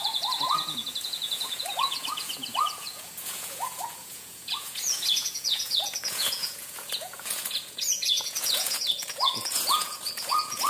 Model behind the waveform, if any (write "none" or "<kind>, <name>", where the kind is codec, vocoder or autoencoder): vocoder, Vocos